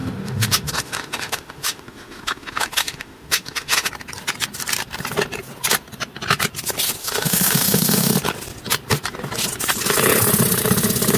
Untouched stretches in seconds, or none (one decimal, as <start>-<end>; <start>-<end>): 3.9-7.0; 8.1-11.2